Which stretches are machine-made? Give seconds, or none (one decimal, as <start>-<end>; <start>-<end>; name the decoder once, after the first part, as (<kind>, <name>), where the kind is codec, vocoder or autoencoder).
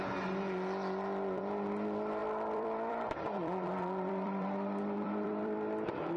2.2-6.2 (vocoder, BigVGAN v2)